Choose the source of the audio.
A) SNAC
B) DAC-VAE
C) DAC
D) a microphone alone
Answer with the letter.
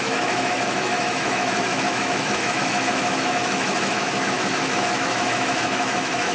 B